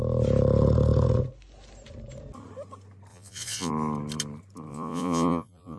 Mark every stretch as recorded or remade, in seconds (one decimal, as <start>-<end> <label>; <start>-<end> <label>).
0.0-3.1 recorded; 3.1-3.7 remade; 3.7-4.7 recorded; 4.7-5.8 remade